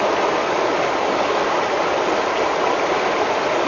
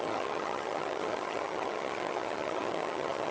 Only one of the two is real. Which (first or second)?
first